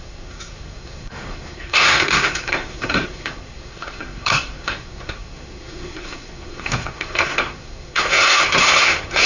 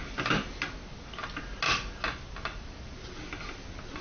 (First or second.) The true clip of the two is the second